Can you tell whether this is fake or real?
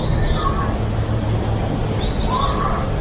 real